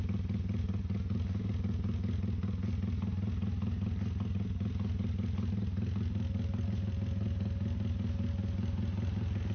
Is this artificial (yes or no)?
no